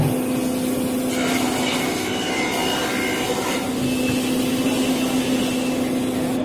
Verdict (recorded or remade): recorded